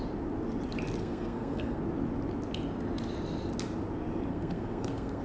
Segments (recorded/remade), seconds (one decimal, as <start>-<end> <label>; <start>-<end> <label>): 0.0-1.0 recorded; 1.0-1.8 remade; 1.8-4.3 recorded; 4.3-5.2 remade